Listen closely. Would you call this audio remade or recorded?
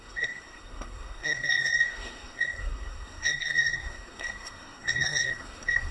remade